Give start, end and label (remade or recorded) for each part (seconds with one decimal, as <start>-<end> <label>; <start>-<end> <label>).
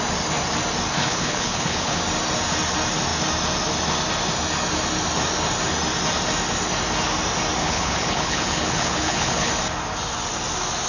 0.0-1.0 recorded; 1.0-2.0 remade; 2.0-7.6 recorded; 7.6-9.5 remade; 9.5-10.9 recorded